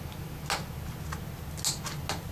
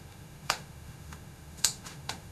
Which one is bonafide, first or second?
first